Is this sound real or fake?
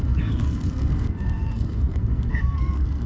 fake